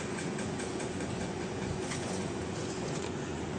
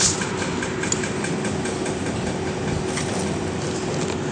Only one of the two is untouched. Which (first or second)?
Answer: second